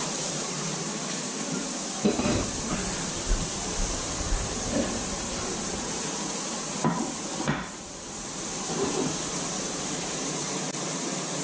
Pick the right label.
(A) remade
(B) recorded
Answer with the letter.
A